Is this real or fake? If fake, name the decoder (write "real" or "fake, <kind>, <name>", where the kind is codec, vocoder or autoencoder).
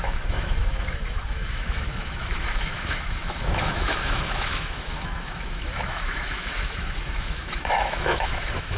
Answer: fake, autoencoder, DAC-VAE